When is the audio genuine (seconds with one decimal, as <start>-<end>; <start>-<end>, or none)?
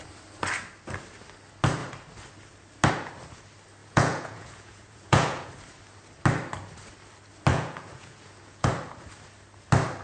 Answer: 0.0-3.8; 5.5-7.5; 8.7-10.0